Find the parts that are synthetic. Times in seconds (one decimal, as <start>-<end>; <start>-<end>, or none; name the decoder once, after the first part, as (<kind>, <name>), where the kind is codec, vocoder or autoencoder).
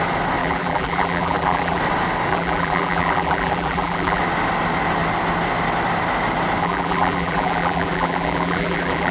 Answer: 0.4-1.8 (vocoder, BigVGAN v2); 2.3-4.2; 6.6-9.1